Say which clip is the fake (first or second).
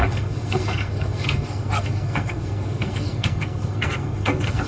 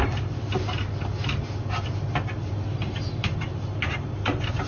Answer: first